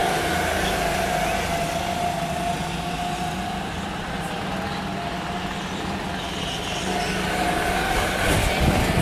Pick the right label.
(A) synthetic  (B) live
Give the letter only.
B